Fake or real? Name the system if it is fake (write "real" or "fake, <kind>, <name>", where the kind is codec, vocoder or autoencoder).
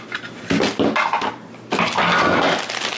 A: real